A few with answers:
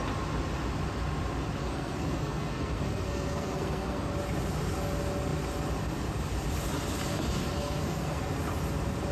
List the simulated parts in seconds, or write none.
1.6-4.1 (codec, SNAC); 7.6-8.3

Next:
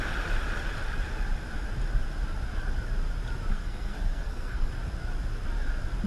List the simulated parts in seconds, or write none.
3.5-4.7 (codec, SNAC)